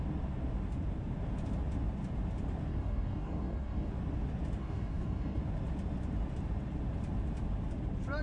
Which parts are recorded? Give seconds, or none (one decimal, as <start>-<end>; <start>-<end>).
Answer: 0.0-2.7; 3.9-4.6; 5.4-8.2